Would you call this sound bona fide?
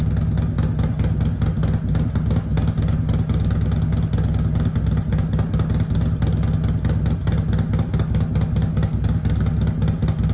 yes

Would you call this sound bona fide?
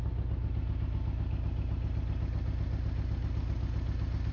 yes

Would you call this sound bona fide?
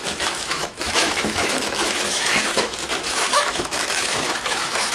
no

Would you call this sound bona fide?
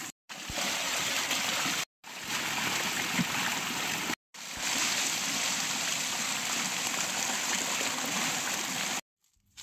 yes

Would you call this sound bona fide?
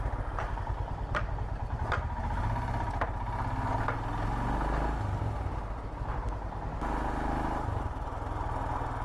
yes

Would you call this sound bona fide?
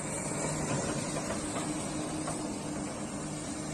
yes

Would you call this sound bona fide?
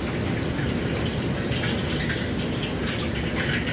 yes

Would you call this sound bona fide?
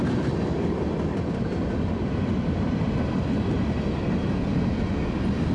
yes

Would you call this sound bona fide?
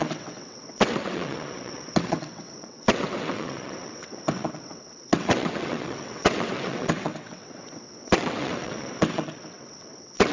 no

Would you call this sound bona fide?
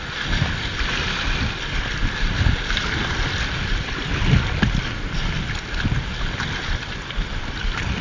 yes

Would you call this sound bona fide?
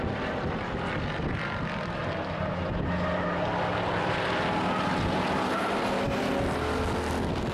yes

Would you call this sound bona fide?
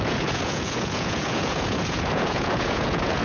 no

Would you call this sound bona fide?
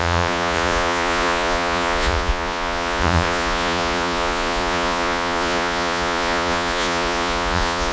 no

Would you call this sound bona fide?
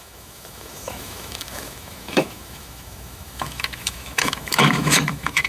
no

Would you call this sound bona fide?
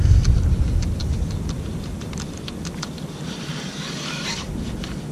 no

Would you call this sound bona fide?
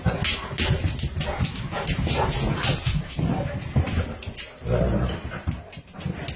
yes